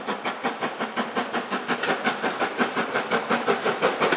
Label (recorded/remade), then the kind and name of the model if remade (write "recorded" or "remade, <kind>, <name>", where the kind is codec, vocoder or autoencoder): recorded